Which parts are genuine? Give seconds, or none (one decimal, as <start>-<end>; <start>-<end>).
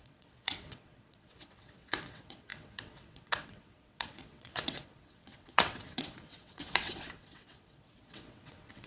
none